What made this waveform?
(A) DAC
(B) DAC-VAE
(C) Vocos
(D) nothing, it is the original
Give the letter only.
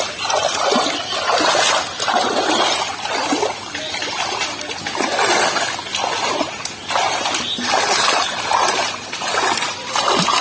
D